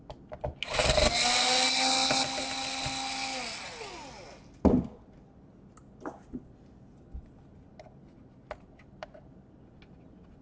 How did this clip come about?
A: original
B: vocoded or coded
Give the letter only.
A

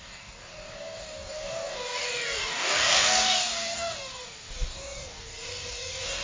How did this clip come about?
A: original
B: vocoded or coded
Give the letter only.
B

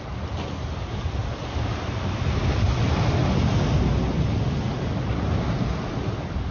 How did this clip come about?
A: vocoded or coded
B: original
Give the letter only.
B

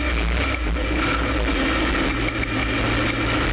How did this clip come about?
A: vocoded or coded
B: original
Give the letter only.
B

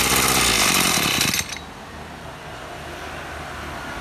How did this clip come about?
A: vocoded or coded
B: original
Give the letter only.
B